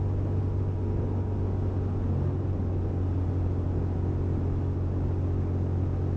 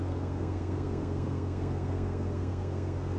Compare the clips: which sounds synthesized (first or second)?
second